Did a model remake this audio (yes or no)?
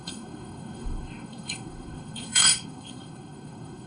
yes